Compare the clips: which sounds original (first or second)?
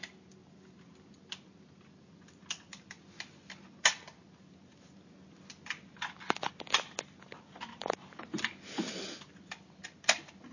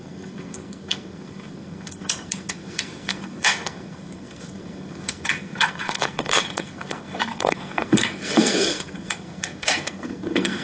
first